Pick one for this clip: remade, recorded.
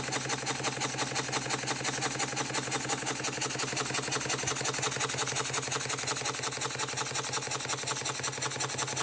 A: recorded